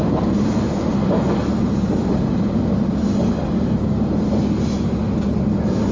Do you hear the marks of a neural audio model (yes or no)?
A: no